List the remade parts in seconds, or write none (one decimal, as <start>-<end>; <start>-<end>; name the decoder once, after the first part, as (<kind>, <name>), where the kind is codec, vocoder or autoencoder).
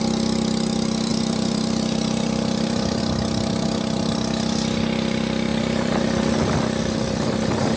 1.1-3.0 (vocoder, BigVGAN v2); 5.5-6.0